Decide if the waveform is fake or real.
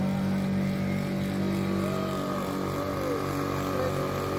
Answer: real